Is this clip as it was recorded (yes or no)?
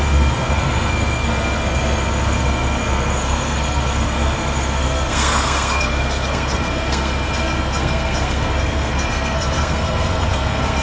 no